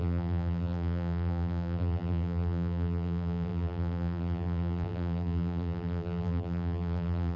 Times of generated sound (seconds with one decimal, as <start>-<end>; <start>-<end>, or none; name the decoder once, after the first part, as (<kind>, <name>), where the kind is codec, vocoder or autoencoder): 0.0-7.4 (vocoder, BigVGAN v2)